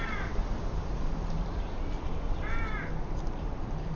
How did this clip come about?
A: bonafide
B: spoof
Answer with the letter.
A